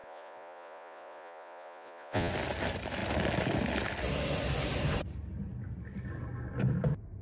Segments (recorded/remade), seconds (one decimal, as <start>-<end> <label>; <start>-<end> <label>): 0.0-2.3 remade; 2.3-7.2 recorded